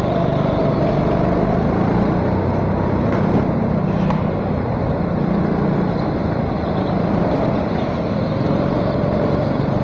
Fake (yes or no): no